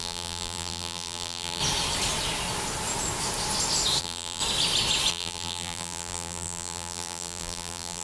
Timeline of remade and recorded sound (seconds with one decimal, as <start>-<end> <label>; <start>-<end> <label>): 0.0-1.6 remade; 1.6-4.0 recorded; 4.0-4.4 remade; 4.4-5.1 recorded; 5.1-8.0 remade